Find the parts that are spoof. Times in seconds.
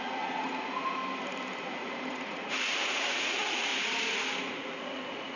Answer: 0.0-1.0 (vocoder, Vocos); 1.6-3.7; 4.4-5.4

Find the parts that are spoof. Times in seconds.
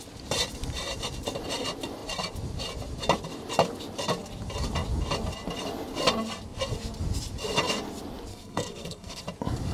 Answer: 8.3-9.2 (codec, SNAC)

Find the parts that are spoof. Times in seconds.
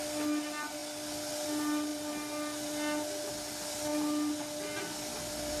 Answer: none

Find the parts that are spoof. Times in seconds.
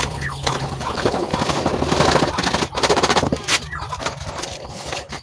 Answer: 0.0-1.3 (codec, HILCodec); 4.4-5.2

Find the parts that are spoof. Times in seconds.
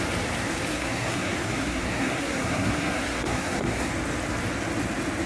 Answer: 0.7-3.9 (codec, SNAC)